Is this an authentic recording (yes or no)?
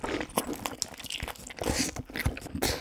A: yes